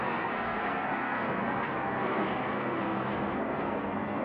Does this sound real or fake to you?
fake